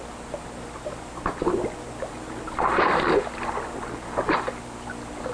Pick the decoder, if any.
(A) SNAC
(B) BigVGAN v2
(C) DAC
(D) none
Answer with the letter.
D